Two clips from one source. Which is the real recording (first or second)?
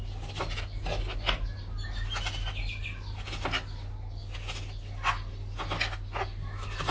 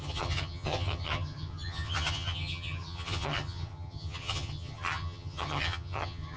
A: first